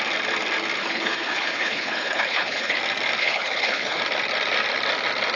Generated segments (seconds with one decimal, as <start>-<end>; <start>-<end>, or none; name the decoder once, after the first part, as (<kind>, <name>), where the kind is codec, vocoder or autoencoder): 0.8-2.8 (codec, HILCodec); 3.2-4.0